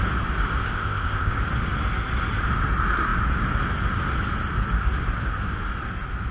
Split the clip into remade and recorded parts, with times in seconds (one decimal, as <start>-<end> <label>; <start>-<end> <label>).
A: 0.0-0.6 recorded; 0.6-1.3 remade; 1.3-6.3 recorded

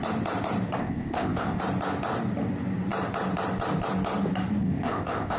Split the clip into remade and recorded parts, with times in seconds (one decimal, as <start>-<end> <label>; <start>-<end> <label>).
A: 0.0-0.8 recorded; 0.8-1.6 remade; 1.6-4.6 recorded; 4.6-5.4 remade

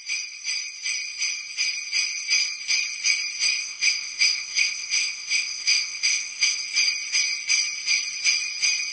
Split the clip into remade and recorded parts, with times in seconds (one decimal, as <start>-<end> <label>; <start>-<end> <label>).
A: 0.0-3.6 recorded; 3.6-6.6 remade; 6.6-8.9 recorded

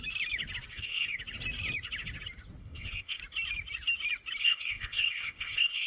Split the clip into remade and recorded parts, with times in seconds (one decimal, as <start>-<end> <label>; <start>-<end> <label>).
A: 0.0-0.7 recorded; 0.7-1.2 remade; 1.2-2.6 recorded; 2.6-3.2 remade; 3.2-4.4 recorded; 4.4-5.9 remade